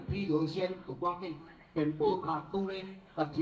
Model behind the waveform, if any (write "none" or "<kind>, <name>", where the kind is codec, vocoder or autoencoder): codec, SNAC